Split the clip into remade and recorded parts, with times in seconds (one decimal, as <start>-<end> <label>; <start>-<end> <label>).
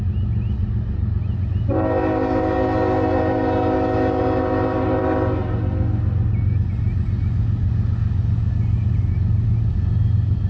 0.0-10.5 recorded